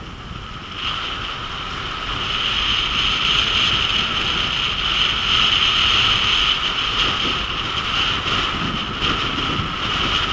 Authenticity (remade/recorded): recorded